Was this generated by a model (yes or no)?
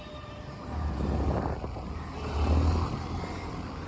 no